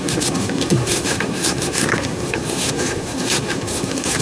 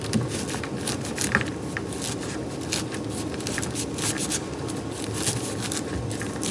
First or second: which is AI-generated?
first